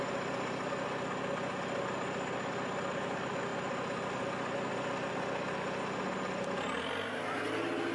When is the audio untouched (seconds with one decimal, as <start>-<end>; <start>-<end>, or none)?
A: 0.0-7.9